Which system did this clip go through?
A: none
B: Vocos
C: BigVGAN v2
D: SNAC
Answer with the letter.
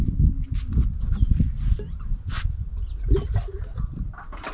A